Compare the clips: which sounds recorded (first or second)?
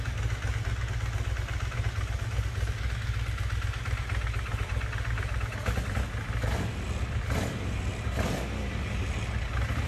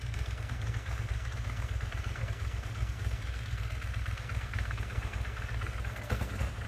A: first